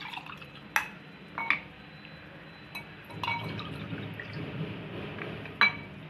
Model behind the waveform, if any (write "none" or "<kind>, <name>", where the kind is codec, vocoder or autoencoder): none